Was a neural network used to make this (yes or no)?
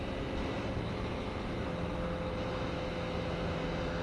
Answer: no